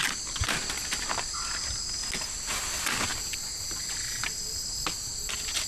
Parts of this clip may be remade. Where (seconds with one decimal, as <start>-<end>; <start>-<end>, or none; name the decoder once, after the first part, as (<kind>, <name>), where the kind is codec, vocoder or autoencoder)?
none